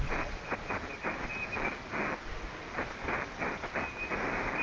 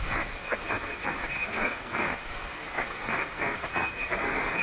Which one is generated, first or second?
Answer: second